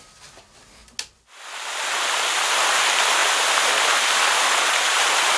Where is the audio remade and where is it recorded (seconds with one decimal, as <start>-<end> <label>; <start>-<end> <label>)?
0.0-3.2 recorded; 3.2-4.2 remade; 4.2-5.4 recorded